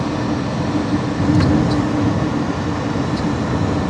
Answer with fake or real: real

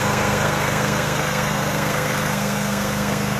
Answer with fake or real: fake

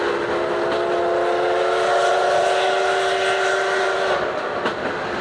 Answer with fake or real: real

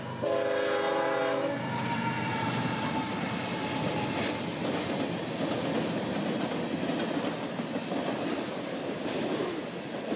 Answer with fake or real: real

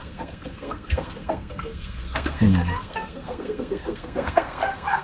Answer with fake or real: fake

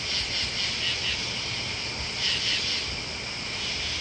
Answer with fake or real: real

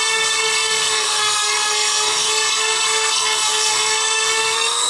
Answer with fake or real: fake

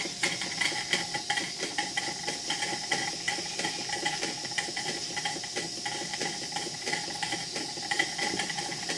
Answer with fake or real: real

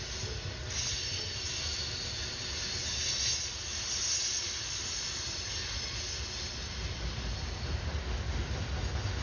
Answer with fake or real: real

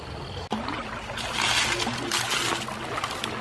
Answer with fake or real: real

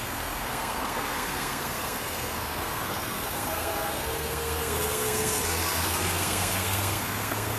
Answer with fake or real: fake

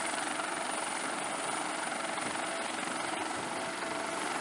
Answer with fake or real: real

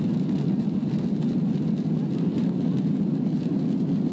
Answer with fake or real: real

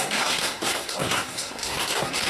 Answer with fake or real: fake